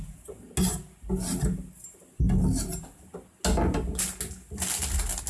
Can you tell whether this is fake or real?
real